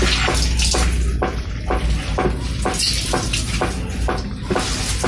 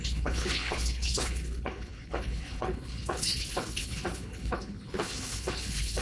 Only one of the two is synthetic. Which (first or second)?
second